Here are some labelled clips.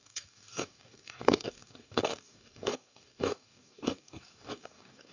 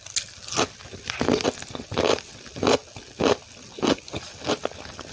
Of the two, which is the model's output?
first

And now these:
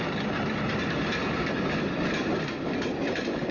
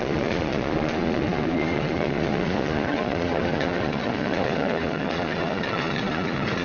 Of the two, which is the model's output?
second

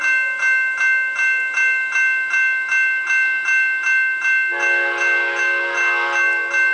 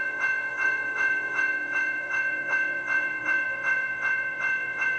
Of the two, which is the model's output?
second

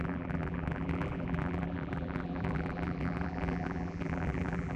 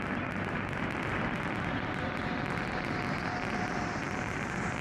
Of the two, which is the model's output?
first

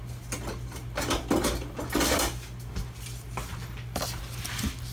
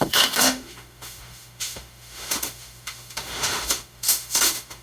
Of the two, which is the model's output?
second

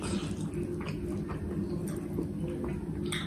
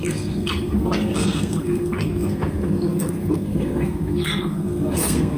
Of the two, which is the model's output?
second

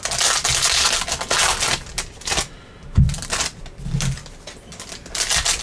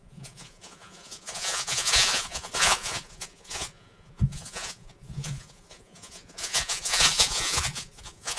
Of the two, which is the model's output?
second